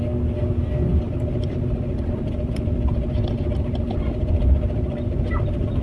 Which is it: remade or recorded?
recorded